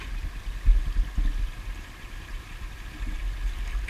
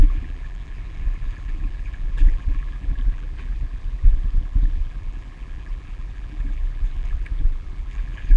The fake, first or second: second